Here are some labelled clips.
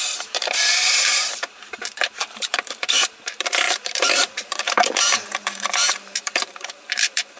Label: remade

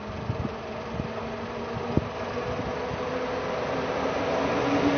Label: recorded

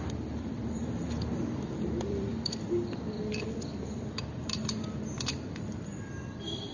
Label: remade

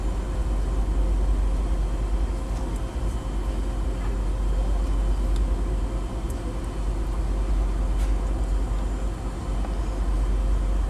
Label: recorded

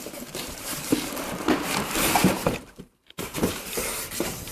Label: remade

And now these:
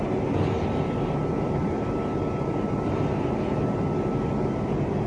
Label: recorded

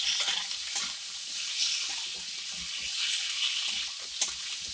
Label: recorded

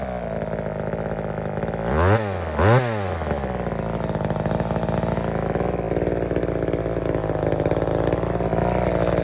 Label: recorded